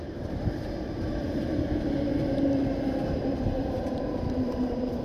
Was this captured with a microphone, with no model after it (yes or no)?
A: no